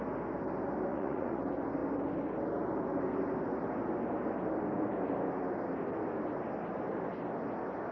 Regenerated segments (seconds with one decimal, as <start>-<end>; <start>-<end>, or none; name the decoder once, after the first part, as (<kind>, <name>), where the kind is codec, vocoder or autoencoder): 0.9-1.4 (vocoder, Vocos)